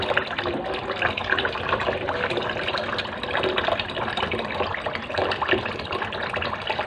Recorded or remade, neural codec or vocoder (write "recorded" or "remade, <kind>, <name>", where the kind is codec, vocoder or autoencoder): recorded